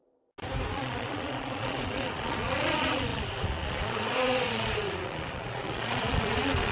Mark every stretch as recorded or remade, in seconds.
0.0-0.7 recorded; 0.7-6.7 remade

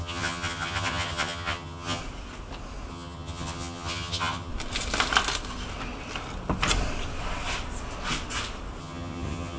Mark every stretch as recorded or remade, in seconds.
0.0-2.0 remade; 2.0-2.9 recorded; 2.9-4.5 remade; 4.5-8.8 recorded; 8.8-9.6 remade

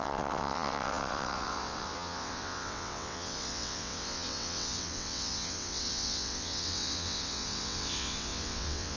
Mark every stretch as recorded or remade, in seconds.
0.0-9.0 remade